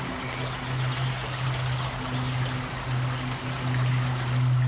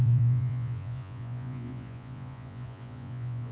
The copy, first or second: second